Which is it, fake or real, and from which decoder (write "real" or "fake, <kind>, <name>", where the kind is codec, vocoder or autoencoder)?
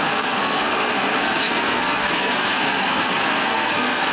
fake, codec, SNAC